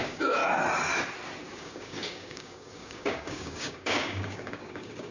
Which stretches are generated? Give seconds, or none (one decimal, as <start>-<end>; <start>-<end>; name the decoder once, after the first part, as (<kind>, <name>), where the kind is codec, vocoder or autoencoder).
0.0-0.4 (codec, DAC); 1.5-5.1